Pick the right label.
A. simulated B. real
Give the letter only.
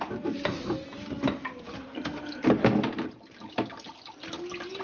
B